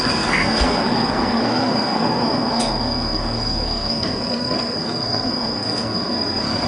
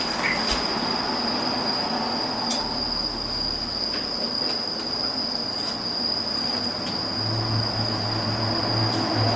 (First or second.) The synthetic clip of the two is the first